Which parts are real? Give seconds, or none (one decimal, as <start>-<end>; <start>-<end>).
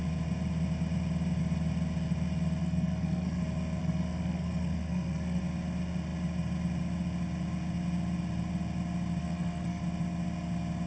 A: 0.0-2.6; 3.4-3.8; 5.4-9.2; 9.8-10.9